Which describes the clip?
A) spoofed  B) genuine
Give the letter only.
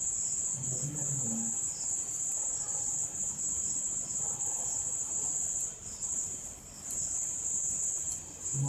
B